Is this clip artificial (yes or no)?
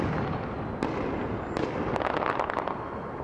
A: no